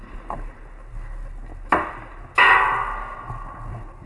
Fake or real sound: real